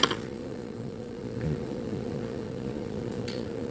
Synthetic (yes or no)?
yes